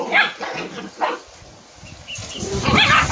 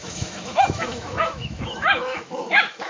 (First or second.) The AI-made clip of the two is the second